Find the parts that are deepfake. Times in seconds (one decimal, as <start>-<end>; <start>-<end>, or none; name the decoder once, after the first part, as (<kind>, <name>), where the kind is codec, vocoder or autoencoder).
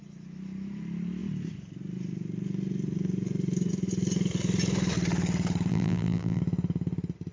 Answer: 5.7-6.4 (vocoder, BigVGAN v2)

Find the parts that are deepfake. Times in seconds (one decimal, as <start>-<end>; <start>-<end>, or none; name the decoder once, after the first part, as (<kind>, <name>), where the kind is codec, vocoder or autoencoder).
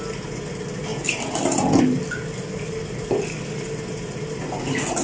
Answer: none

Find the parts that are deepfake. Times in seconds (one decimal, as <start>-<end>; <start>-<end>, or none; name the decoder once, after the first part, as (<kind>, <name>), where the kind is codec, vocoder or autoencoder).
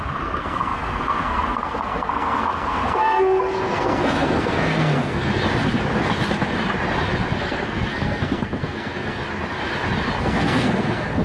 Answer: 0.0-5.3 (codec, SNAC); 7.4-9.2; 10.2-11.2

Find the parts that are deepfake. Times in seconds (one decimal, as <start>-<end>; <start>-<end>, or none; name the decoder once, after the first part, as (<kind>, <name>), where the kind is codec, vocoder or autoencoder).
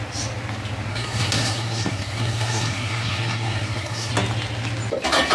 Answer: 0.9-4.1 (codec, SNAC)